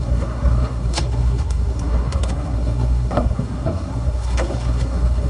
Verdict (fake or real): fake